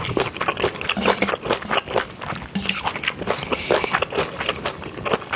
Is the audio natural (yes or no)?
yes